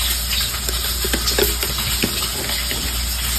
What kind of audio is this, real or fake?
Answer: real